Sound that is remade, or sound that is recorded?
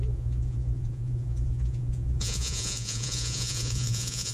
remade